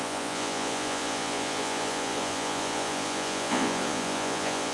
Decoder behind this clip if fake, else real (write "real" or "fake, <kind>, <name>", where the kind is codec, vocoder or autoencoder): fake, vocoder, Vocos